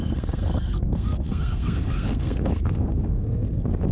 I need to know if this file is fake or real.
fake